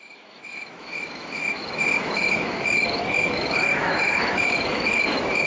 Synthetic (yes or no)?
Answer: yes